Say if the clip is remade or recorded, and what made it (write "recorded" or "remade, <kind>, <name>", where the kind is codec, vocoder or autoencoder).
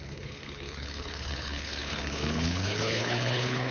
remade, codec, HILCodec